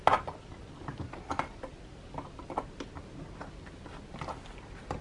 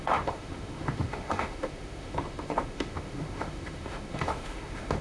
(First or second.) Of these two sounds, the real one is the first